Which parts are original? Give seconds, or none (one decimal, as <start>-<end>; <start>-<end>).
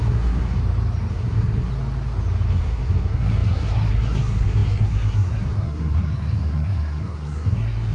0.6-1.1; 1.7-2.5